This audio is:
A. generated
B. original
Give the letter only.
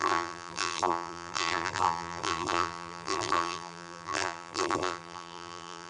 A